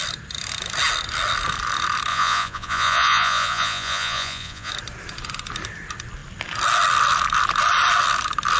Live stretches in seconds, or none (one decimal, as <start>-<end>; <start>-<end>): 0.0-2.1; 4.7-8.6